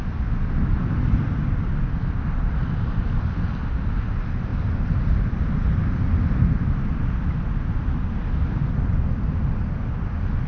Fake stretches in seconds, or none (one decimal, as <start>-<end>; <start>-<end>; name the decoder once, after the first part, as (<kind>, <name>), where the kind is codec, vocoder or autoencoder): none